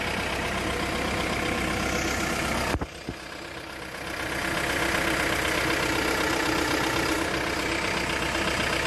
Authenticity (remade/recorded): recorded